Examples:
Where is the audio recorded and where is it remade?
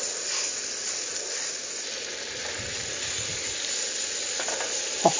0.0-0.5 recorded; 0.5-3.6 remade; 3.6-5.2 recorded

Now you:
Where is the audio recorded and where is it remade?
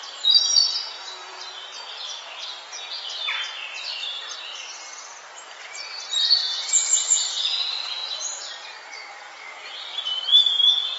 0.0-3.9 recorded; 3.9-4.8 remade; 4.8-9.6 recorded; 9.6-10.4 remade; 10.4-11.0 recorded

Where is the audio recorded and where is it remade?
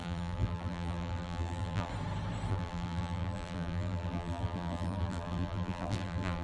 0.0-1.9 remade; 1.9-2.5 recorded; 2.5-6.4 remade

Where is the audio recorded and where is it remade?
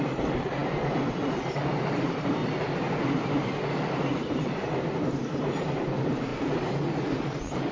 0.0-2.4 remade; 2.4-3.7 recorded; 3.7-6.3 remade; 6.3-7.1 recorded; 7.1-7.7 remade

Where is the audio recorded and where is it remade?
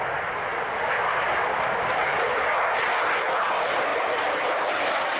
0.0-3.9 recorded; 3.9-4.8 remade; 4.8-5.2 recorded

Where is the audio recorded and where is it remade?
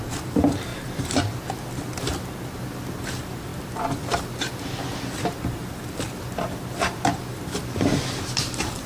0.0-8.9 remade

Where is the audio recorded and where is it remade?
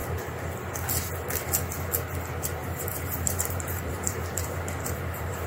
0.0-2.6 recorded; 2.6-5.5 remade